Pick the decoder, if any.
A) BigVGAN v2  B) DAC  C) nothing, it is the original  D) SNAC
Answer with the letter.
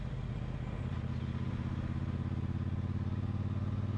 C